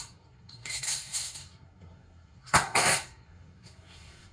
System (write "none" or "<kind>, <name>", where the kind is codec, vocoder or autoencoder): codec, SNAC